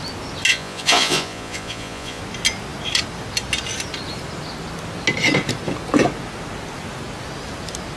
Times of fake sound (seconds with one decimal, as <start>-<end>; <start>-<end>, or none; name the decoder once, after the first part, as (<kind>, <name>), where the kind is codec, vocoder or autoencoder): 0.5-2.2 (vocoder, Vocos)